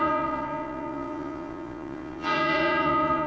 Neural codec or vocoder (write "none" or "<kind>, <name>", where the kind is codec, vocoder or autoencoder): vocoder, Vocos